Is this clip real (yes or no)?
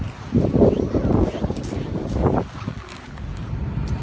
yes